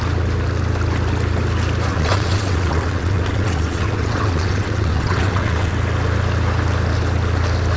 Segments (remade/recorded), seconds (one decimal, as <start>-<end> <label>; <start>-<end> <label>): 0.0-1.9 recorded; 1.9-5.7 remade; 5.7-7.8 recorded